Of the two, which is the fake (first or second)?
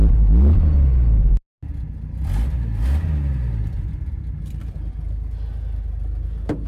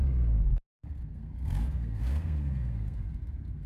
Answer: second